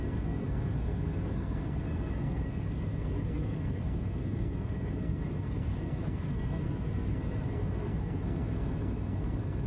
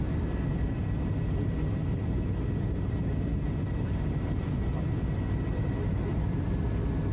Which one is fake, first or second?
first